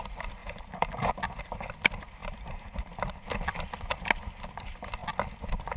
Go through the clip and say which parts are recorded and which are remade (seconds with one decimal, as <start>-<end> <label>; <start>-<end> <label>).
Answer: 0.0-0.4 recorded; 0.4-1.1 remade; 1.1-2.2 recorded; 2.2-2.8 remade; 2.8-5.8 recorded